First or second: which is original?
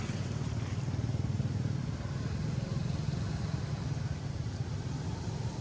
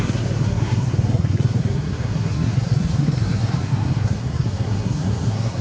first